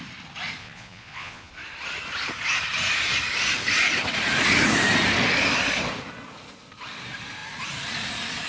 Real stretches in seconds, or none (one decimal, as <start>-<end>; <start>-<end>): 0.0-0.6; 1.5-8.5